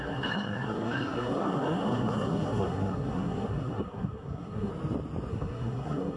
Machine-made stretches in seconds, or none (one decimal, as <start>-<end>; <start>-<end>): 0.0-4.7; 5.3-6.2